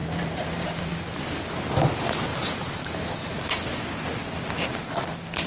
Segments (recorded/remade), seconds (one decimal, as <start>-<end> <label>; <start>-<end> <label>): 0.0-0.9 remade; 0.9-2.3 recorded; 2.3-3.8 remade; 3.8-5.5 recorded